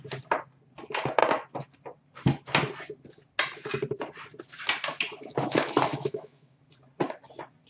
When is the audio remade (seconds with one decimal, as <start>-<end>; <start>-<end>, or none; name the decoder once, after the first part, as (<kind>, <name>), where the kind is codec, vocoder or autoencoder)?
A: 5.9-6.6 (autoencoder, DAC-VAE)